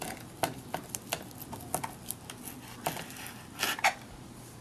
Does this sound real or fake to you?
real